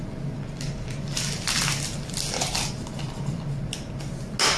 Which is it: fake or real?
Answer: real